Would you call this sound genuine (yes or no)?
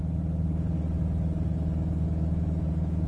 yes